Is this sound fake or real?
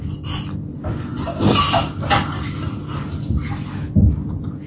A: real